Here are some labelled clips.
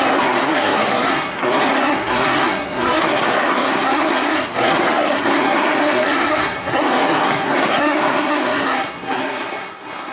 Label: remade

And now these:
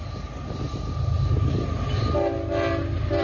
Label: recorded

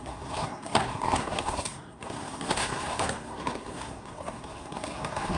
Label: remade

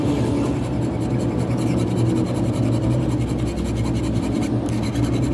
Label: recorded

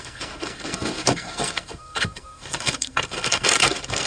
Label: remade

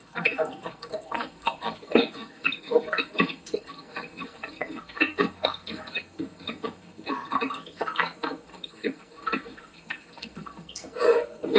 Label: remade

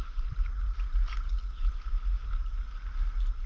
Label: recorded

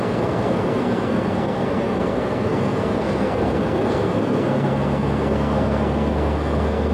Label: remade